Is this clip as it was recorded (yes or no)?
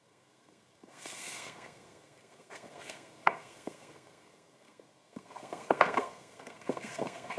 no